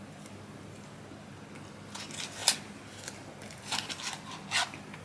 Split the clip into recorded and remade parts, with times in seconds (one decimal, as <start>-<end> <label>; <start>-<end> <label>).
0.0-5.0 recorded

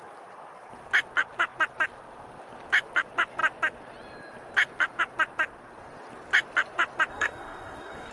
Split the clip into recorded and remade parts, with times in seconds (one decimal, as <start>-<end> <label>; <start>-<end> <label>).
0.0-7.1 recorded; 7.1-8.1 remade

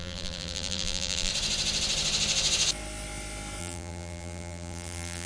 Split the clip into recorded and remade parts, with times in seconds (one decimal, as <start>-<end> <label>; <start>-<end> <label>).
0.0-1.3 remade; 1.3-3.6 recorded; 3.6-5.3 remade

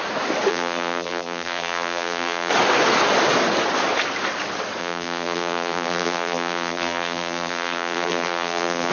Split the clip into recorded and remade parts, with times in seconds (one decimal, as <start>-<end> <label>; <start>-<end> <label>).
0.0-0.5 recorded; 0.5-2.5 remade; 2.5-4.8 recorded; 4.8-8.9 remade

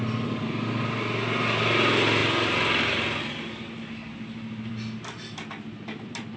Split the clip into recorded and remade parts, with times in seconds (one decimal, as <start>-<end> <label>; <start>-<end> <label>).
0.0-6.4 recorded

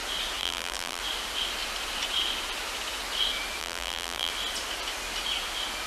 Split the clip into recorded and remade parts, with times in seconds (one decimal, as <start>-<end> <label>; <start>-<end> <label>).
0.0-0.4 recorded; 0.4-1.0 remade; 1.0-3.6 recorded; 3.6-4.3 remade; 4.3-5.9 recorded

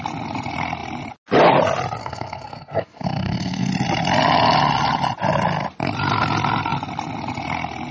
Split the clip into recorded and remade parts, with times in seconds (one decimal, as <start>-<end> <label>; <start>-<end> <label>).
0.0-2.0 recorded; 2.0-3.7 remade; 3.7-7.9 recorded

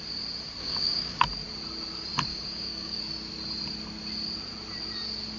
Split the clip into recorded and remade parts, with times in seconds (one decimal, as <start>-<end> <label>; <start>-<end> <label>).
0.0-0.6 recorded; 0.6-1.2 remade; 1.2-2.3 recorded; 2.3-3.0 remade; 3.0-5.4 recorded